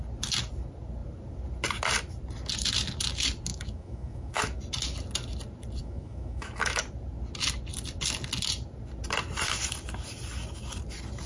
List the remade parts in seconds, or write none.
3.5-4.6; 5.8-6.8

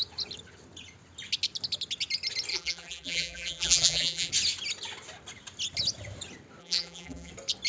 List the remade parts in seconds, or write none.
2.5-4.3; 6.6-7.3

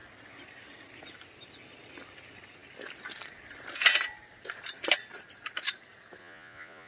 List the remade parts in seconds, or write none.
6.2-6.9

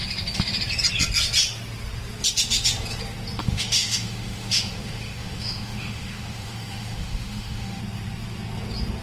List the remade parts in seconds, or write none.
3.4-7.8